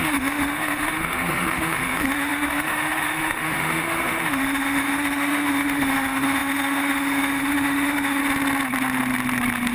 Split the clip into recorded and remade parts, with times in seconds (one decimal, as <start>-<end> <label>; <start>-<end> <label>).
0.0-8.2 remade; 8.2-9.7 recorded